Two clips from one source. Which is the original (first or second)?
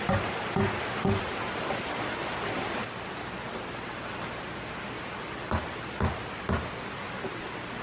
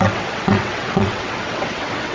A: first